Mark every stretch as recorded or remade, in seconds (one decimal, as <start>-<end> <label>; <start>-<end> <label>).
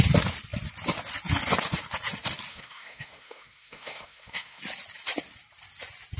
0.0-2.5 recorded; 2.5-4.6 remade; 4.6-6.2 recorded